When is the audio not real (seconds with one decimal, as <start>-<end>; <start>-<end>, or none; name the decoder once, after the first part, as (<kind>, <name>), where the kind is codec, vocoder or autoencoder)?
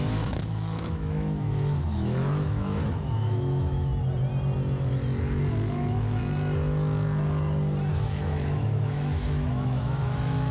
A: 0.0-3.9 (autoencoder, DAC-VAE); 5.5-6.2; 7.9-10.5